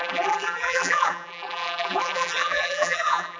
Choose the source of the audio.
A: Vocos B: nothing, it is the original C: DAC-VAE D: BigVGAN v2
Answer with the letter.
D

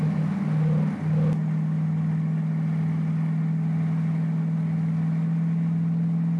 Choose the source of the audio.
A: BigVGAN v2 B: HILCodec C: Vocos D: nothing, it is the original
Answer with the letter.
D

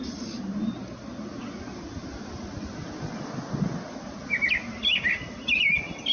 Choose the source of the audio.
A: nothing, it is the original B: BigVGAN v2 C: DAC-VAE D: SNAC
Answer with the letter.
A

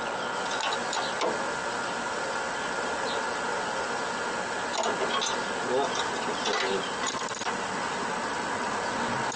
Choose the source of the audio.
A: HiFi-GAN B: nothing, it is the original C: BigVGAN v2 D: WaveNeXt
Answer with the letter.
B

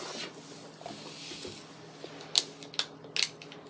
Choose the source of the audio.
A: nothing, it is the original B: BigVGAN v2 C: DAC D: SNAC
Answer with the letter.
A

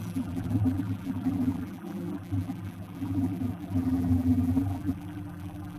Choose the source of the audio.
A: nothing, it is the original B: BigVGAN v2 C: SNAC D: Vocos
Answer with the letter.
B